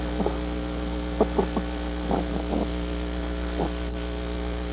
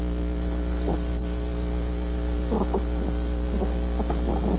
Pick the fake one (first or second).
first